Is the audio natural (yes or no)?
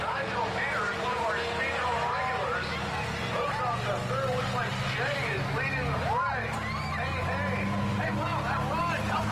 yes